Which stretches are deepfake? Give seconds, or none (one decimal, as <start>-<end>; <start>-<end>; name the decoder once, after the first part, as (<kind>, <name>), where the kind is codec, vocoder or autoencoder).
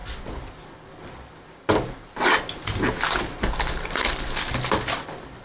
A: none